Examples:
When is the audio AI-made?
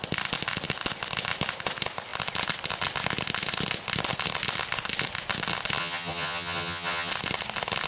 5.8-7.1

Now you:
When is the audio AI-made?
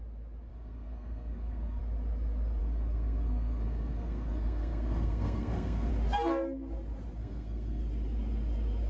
0.5-1.8; 2.6-5.9; 7.2-7.8